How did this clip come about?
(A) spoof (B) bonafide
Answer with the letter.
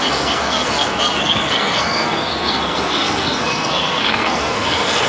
A